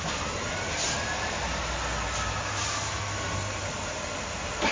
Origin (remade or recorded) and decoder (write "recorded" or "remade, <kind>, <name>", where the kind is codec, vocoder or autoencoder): recorded